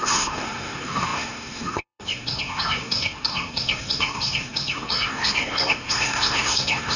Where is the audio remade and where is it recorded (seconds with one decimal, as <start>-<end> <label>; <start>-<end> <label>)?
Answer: 0.0-7.0 remade